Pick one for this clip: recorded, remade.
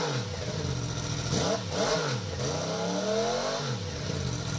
recorded